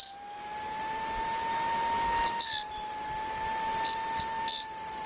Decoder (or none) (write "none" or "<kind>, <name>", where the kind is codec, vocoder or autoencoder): none